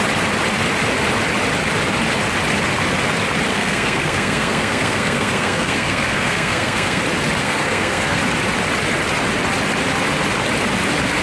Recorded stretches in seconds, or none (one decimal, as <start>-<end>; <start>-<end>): 0.0-3.5; 7.0-7.4; 8.2-11.2